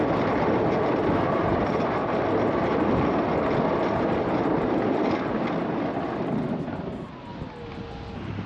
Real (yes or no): yes